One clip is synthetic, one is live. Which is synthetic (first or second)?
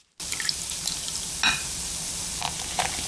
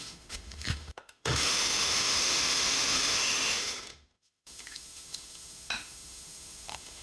second